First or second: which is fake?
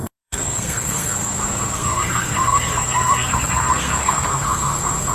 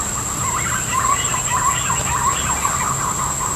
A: first